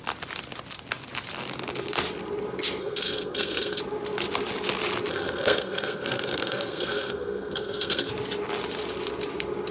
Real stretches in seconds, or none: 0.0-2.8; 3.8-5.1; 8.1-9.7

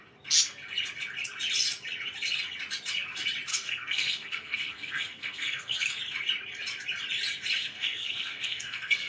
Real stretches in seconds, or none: 0.0-3.5; 6.0-7.6